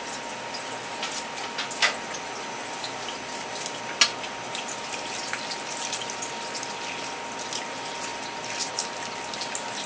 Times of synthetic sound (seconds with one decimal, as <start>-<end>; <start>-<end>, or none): none